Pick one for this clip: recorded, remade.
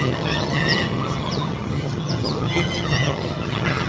remade